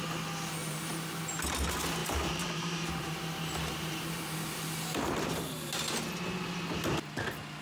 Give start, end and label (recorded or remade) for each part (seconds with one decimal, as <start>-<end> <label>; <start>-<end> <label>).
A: 0.0-0.6 recorded; 0.6-1.2 remade; 1.2-2.0 recorded; 2.0-5.7 remade; 5.7-7.6 recorded